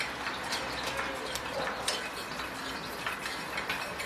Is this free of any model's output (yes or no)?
yes